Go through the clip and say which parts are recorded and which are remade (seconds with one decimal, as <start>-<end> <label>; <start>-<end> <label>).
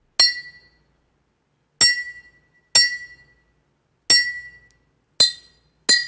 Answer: 0.0-6.1 recorded